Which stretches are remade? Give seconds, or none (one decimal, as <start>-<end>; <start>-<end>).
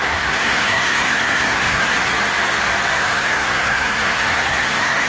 0.0-2.1; 2.9-5.1